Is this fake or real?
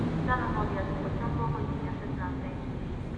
real